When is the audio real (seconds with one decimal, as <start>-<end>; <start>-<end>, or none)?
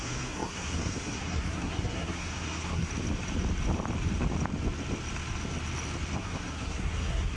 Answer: 2.9-6.2